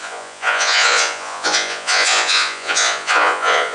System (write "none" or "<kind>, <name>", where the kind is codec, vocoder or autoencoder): vocoder, Vocos